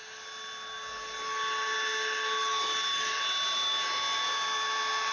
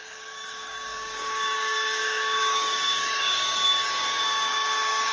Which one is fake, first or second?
second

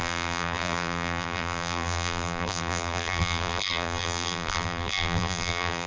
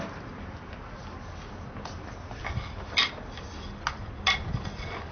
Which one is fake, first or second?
first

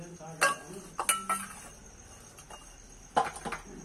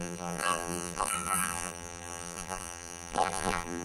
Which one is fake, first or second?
second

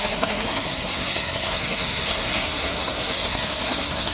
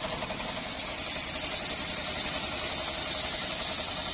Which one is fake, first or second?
first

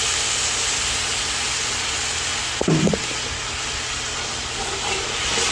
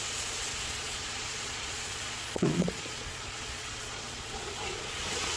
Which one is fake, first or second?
second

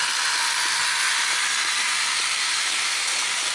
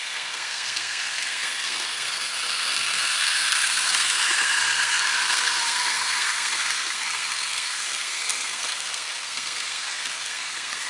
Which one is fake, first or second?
second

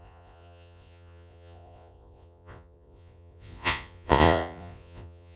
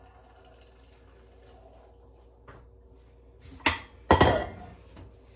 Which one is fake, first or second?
first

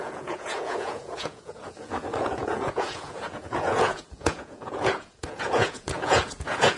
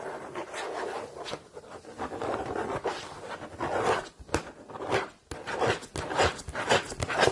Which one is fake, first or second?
first